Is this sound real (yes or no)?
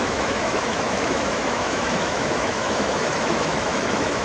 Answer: no